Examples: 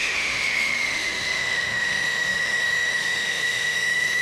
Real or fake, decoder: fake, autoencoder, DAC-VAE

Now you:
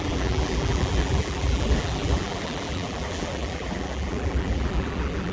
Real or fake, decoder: fake, vocoder, BigVGAN v2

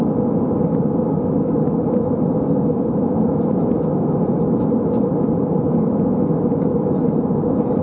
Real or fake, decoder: real